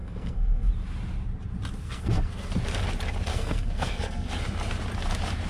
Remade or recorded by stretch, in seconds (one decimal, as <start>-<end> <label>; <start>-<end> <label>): 0.0-0.7 remade; 0.7-1.8 recorded; 1.8-2.5 remade; 2.5-3.3 recorded; 3.3-4.3 remade; 4.3-5.5 recorded